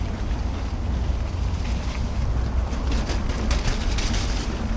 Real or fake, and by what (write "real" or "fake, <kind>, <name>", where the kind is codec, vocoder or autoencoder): real